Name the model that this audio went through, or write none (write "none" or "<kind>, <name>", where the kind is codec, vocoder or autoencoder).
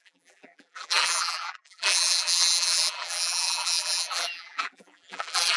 vocoder, BigVGAN v2